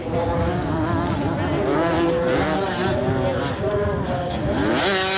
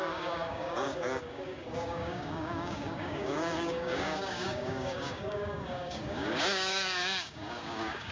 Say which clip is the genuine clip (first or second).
first